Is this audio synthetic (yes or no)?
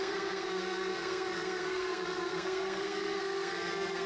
yes